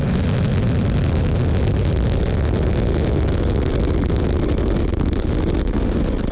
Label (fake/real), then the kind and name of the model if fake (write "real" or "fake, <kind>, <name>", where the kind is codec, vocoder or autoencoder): real